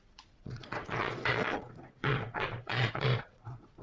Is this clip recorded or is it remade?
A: remade